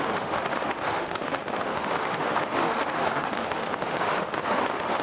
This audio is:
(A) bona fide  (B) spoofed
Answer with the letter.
B